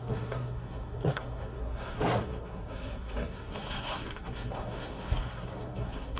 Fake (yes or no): yes